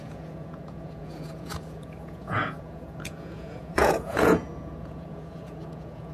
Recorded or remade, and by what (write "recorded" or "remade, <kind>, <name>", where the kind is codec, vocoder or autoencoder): remade, vocoder, Vocos